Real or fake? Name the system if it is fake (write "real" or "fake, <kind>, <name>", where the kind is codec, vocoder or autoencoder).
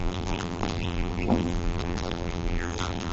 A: fake, vocoder, BigVGAN v2